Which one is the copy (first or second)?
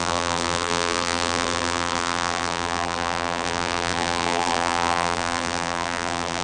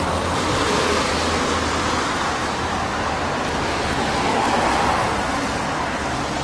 first